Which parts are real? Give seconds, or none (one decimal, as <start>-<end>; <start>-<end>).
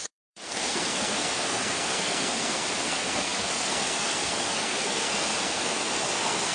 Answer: none